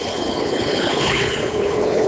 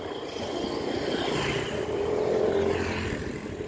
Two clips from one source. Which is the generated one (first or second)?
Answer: first